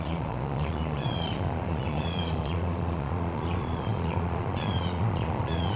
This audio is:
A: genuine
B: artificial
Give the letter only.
B